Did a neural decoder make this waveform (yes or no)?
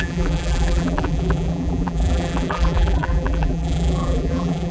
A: yes